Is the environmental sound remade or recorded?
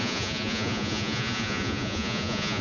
remade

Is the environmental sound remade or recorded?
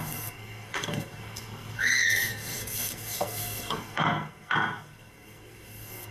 remade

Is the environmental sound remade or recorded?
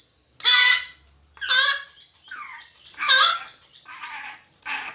recorded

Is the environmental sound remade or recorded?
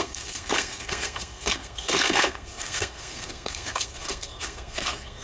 remade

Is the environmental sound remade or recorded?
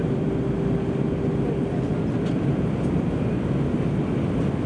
recorded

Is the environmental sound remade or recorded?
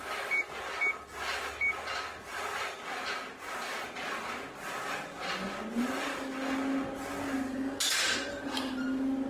recorded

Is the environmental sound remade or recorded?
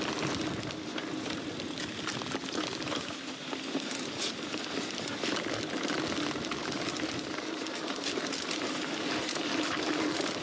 recorded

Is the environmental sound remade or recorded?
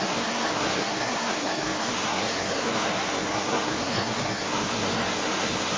remade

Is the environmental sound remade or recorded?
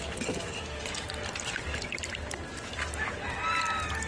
recorded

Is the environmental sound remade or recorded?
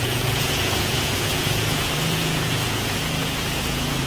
remade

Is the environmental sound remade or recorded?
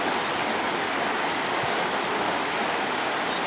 recorded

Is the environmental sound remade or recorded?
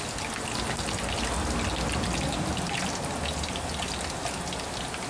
recorded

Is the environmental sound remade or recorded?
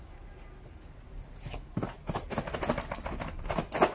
recorded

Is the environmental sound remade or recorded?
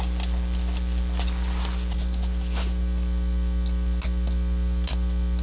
recorded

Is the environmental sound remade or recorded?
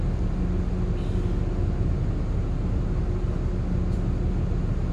recorded